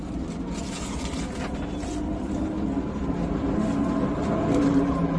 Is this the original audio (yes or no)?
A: yes